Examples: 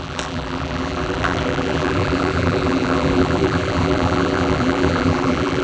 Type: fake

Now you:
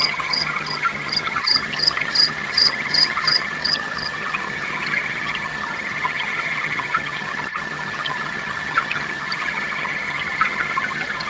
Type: fake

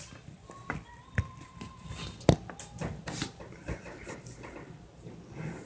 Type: real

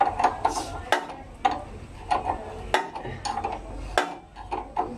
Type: real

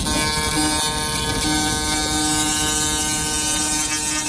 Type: real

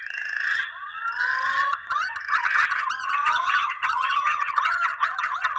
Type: fake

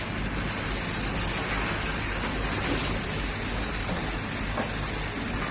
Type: real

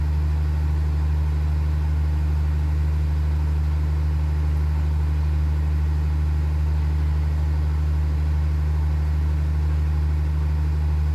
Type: real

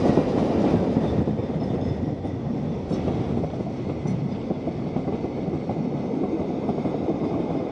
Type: real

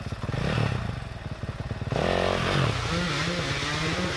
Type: real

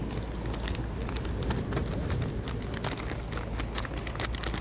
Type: real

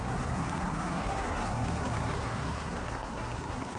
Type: fake